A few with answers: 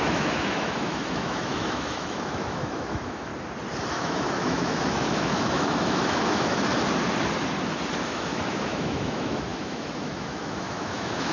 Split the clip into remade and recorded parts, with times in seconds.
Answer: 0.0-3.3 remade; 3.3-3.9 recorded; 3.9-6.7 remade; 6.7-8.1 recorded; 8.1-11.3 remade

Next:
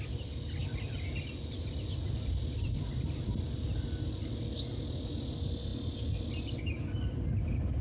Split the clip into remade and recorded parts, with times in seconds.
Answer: 0.0-7.8 recorded